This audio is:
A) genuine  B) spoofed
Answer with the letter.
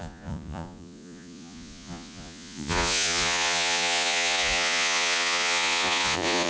B